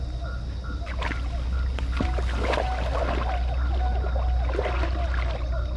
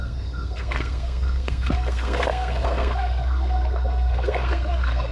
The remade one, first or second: second